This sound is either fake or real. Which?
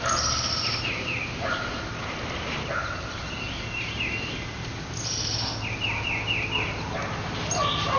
real